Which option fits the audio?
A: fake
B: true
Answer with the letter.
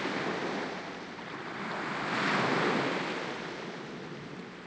B